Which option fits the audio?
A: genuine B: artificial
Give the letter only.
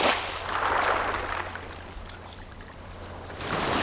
A